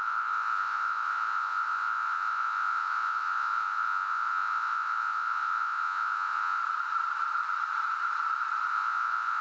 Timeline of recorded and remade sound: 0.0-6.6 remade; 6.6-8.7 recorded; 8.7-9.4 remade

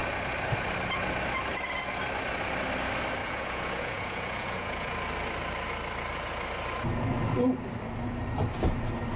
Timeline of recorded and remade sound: 0.0-3.2 recorded; 3.2-4.9 remade; 4.9-9.2 recorded

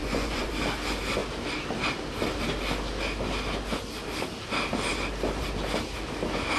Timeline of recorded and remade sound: 0.0-0.5 remade; 0.5-6.6 recorded

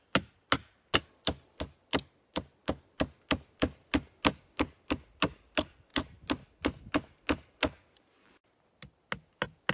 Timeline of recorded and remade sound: 0.0-9.7 recorded

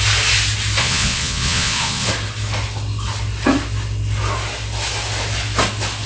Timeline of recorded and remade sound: 0.0-0.8 recorded; 0.8-2.1 remade; 2.1-6.1 recorded